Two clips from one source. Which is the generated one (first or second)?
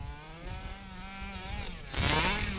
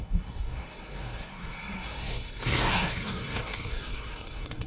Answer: second